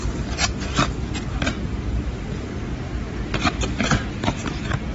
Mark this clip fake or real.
real